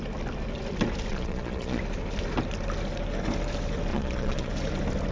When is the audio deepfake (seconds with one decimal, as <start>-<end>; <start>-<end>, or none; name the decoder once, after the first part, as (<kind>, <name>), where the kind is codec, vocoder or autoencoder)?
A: 1.1-1.8 (vocoder, Vocos); 3.9-4.5